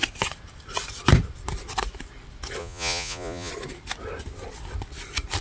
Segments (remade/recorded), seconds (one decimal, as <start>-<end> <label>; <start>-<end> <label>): 0.0-2.6 recorded; 2.6-3.5 remade; 3.5-5.4 recorded